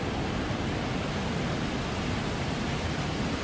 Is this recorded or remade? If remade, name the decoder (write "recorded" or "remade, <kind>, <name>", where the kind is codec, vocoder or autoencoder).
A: recorded